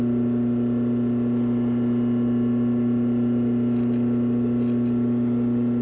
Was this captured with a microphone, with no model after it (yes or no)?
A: yes